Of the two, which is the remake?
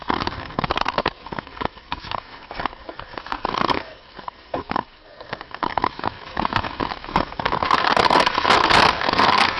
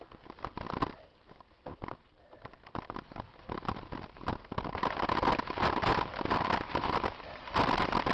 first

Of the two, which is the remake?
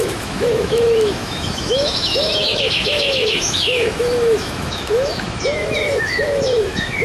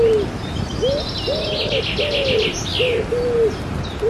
first